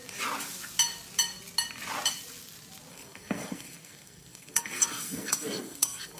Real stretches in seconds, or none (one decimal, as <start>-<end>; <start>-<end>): 0.0-2.9